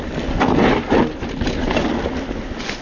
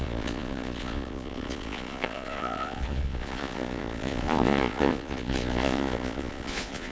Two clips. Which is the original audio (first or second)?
first